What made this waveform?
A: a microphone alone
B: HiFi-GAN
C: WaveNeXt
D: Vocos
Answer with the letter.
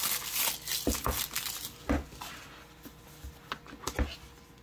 A